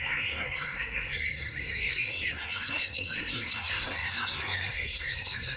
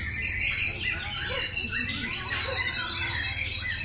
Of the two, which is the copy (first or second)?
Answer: first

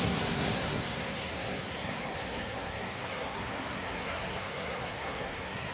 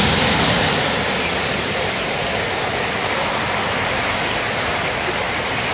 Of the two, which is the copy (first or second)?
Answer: first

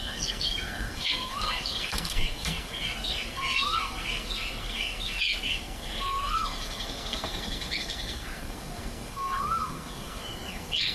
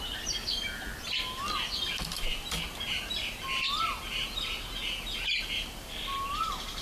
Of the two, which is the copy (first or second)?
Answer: first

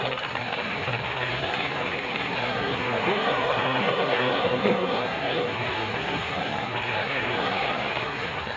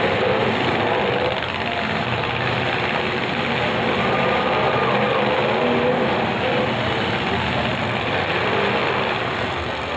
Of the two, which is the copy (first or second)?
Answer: first